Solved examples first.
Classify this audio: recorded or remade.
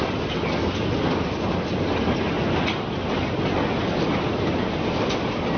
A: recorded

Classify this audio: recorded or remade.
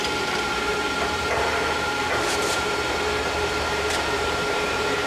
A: remade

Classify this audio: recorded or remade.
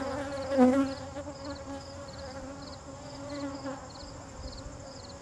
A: recorded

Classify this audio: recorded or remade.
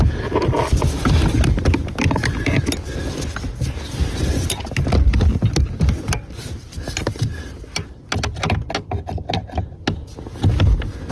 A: recorded